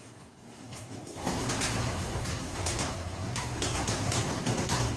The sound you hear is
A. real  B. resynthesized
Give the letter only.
B